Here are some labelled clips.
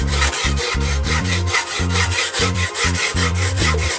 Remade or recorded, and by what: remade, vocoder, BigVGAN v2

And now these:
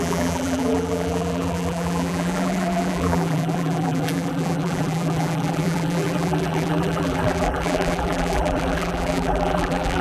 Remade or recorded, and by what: remade, vocoder, BigVGAN v2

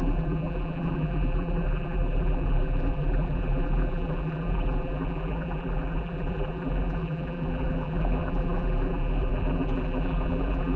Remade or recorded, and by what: remade, vocoder, BigVGAN v2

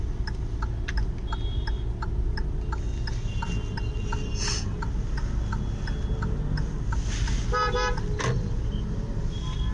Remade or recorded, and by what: recorded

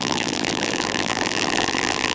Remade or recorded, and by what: remade, vocoder, BigVGAN v2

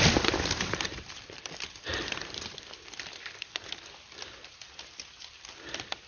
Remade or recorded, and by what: remade, vocoder, BigVGAN v2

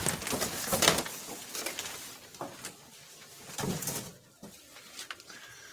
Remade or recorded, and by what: recorded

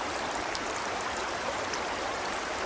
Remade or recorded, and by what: remade, vocoder, BigVGAN v2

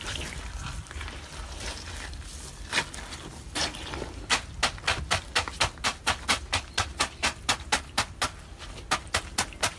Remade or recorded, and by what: recorded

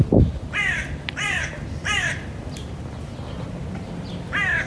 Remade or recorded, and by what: remade, vocoder, BigVGAN v2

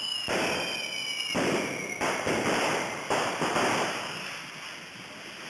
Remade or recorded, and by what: recorded